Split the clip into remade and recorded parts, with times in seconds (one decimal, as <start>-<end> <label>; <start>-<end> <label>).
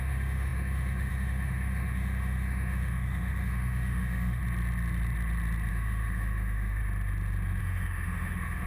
0.0-4.4 remade; 4.4-5.7 recorded; 5.7-6.8 remade; 6.8-7.6 recorded; 7.6-8.7 remade